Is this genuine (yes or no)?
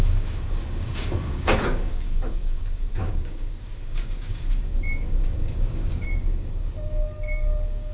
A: no